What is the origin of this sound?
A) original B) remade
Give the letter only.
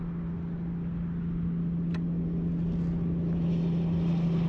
A